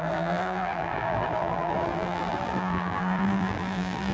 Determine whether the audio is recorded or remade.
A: remade